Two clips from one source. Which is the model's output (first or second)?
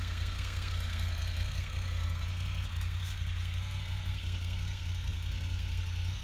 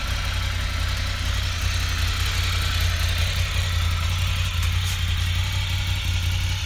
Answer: first